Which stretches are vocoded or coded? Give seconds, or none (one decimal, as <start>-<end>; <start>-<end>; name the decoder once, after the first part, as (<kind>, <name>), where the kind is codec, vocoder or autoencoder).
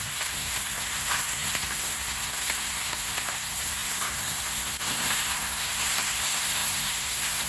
0.0-7.5 (codec, SNAC)